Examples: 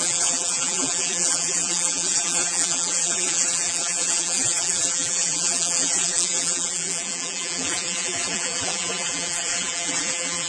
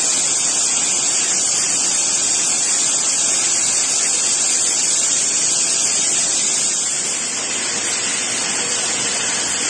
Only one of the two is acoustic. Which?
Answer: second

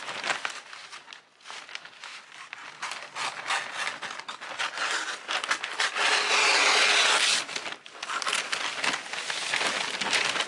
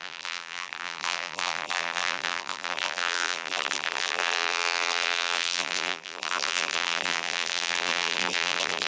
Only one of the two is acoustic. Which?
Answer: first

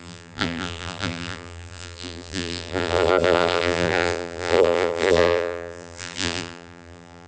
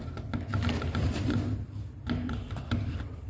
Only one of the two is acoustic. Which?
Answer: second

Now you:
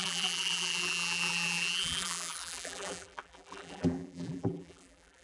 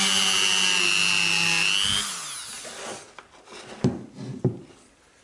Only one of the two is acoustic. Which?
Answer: second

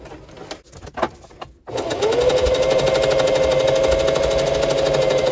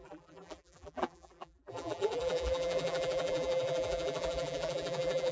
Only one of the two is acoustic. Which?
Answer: first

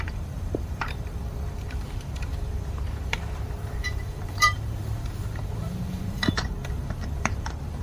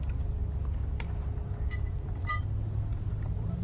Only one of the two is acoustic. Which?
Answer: second